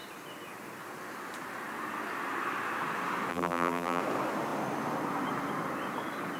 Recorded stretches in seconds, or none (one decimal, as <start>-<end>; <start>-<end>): 0.0-3.3; 4.0-6.4